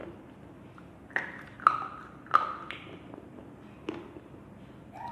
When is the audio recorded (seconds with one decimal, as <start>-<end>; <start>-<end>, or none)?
0.0-5.1